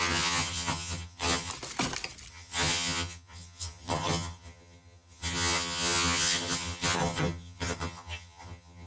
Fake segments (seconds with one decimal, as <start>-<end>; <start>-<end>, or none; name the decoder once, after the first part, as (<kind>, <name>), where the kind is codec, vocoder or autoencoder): 0.0-1.5 (vocoder, HiFi-GAN); 2.3-8.9